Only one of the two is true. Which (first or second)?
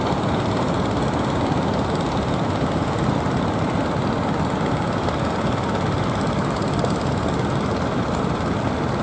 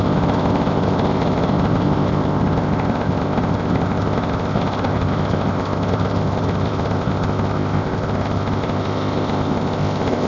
first